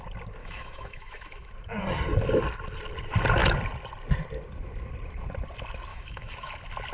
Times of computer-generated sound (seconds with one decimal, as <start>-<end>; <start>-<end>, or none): 0.4-1.5; 5.9-6.5